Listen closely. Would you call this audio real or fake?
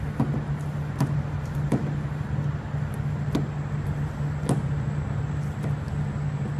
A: real